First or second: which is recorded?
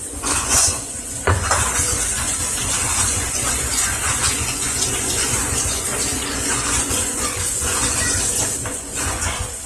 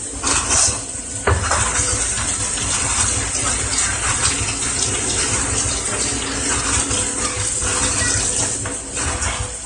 second